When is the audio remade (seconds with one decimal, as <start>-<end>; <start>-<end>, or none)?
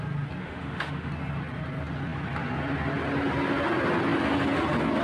0.4-1.1